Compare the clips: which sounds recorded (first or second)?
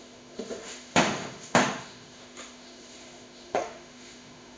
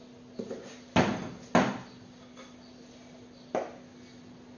second